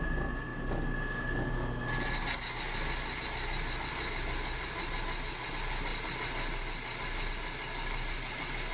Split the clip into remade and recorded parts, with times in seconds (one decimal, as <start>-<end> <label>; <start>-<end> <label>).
0.0-8.7 recorded